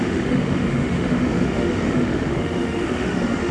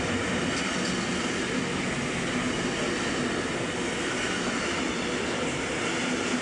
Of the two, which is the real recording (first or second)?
second